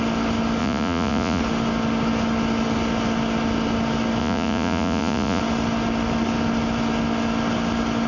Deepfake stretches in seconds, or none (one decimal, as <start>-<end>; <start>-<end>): 0.6-1.4; 4.2-5.4